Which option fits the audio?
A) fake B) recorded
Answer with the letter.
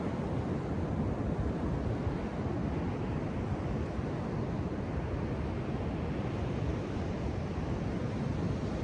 B